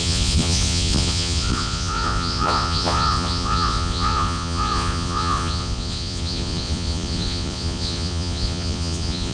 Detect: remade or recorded remade